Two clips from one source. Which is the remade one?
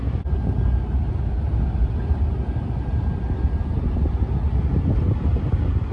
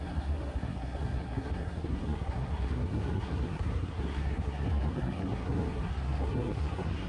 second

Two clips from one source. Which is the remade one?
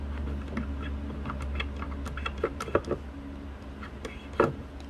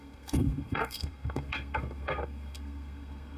second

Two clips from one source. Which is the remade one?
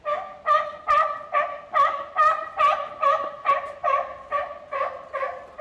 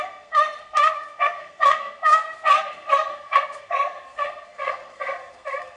second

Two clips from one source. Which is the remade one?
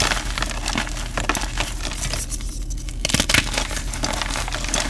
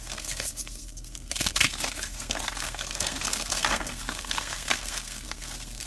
second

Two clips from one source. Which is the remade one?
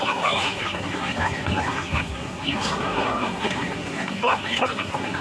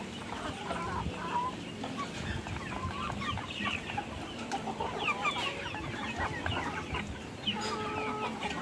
first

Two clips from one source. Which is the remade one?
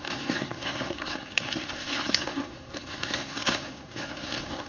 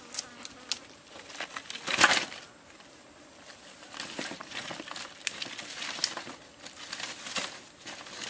first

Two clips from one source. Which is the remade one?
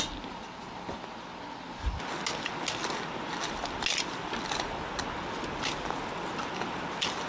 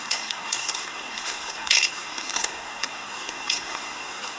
second